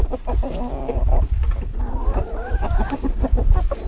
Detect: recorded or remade recorded